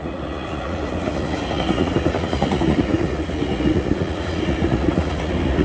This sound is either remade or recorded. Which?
remade